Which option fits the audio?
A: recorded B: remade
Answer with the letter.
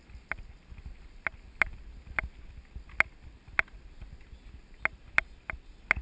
A